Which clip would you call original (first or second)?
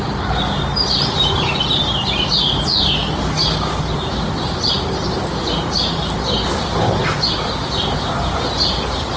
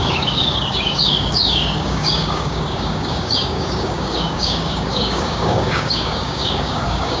first